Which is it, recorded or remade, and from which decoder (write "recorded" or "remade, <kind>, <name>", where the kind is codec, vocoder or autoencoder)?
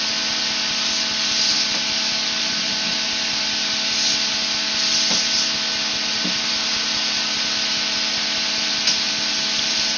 recorded